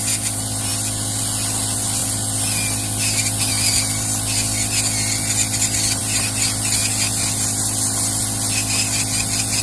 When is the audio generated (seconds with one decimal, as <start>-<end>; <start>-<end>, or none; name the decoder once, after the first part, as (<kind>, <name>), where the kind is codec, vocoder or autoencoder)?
none